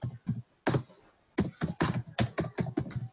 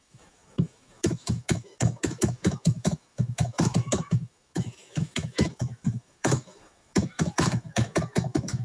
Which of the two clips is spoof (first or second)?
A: second